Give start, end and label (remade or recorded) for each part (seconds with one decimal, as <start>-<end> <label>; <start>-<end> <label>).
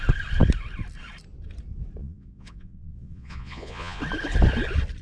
0.0-2.0 recorded; 2.0-4.0 remade; 4.0-5.0 recorded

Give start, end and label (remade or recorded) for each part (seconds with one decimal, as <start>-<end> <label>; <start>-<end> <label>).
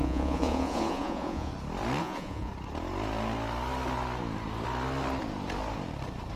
0.0-1.5 remade; 1.5-2.0 recorded; 2.0-2.5 remade; 2.5-6.4 recorded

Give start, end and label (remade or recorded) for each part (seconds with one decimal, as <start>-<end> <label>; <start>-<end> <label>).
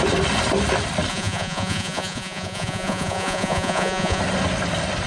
0.0-1.1 recorded; 1.1-4.2 remade; 4.2-5.1 recorded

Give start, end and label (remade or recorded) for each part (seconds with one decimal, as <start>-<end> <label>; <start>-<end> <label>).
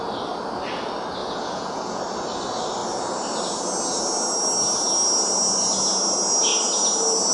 0.0-1.2 recorded; 1.2-2.0 remade; 2.0-7.3 recorded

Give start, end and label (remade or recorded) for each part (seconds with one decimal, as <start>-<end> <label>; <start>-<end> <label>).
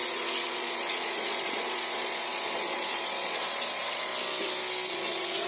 0.0-4.1 remade; 4.1-4.9 recorded; 4.9-5.5 remade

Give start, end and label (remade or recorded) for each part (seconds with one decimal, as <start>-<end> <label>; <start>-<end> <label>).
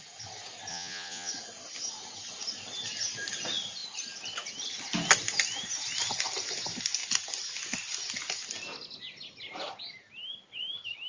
0.0-0.7 recorded; 0.7-1.3 remade; 1.3-11.1 recorded